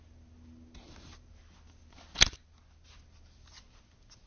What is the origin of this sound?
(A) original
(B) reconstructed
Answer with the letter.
A